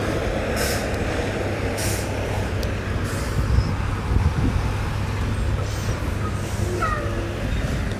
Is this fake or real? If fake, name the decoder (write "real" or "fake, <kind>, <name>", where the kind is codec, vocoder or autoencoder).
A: real